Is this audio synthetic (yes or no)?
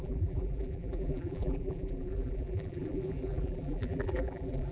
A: yes